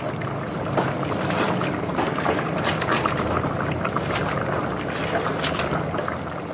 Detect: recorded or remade recorded